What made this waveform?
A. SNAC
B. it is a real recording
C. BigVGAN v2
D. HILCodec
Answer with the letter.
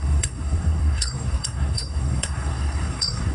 A